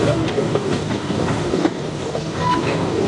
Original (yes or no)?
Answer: no